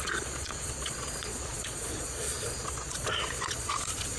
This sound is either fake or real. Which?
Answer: fake